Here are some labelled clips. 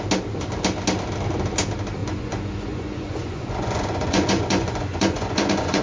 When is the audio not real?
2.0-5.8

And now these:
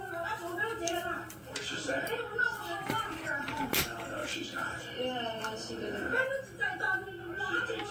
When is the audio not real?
4.2-5.7